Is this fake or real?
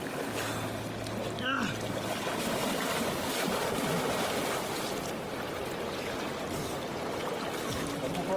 real